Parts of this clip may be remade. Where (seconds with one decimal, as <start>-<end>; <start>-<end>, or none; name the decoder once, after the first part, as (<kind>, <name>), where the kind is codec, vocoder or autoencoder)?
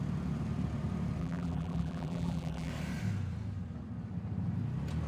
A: 1.2-2.7 (vocoder, BigVGAN v2)